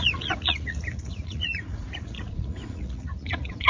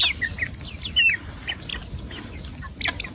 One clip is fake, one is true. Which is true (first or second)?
second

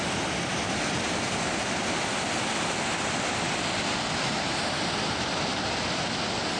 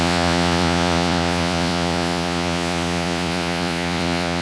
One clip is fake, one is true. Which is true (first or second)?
first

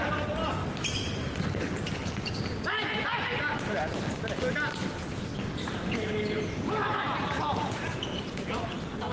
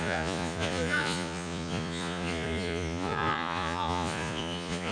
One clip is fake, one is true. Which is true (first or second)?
first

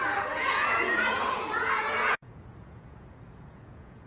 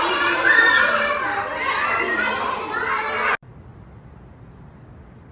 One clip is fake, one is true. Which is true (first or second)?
second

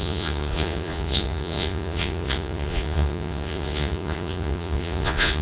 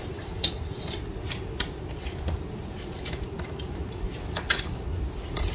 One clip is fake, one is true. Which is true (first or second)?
second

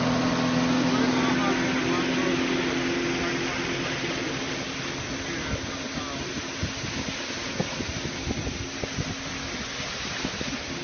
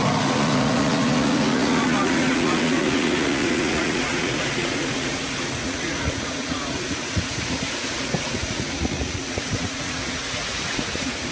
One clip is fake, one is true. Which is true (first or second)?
first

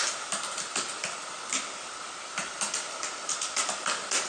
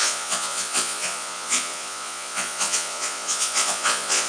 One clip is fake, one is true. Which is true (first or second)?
first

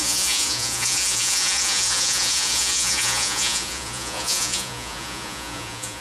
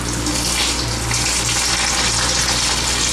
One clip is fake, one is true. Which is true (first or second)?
second